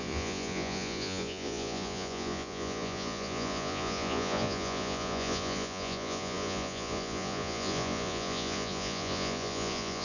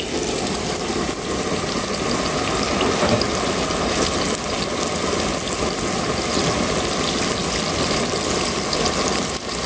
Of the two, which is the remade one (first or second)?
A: first